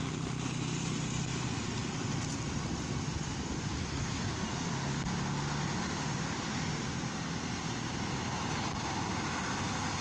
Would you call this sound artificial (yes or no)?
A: no